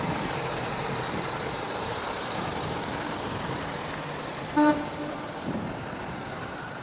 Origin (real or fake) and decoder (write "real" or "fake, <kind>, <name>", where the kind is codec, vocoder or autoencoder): fake, vocoder, BigVGAN v2